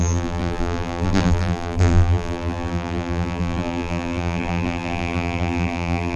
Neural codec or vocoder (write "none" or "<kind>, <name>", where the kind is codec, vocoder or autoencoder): vocoder, BigVGAN v2